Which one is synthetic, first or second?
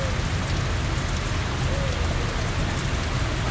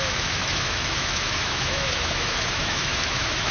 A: second